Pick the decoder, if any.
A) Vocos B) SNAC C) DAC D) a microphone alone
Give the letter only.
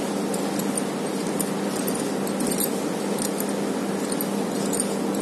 D